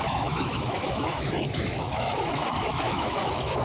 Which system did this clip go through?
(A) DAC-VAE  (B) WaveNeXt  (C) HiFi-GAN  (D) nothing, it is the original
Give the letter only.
A